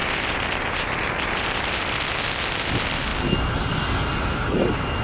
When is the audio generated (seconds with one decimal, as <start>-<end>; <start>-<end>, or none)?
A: none